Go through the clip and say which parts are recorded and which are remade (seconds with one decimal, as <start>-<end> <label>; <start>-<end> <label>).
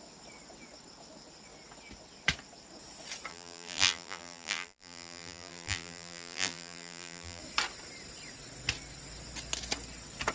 0.0-3.3 recorded; 3.3-7.4 remade; 7.4-10.3 recorded